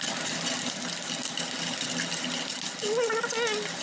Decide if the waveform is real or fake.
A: real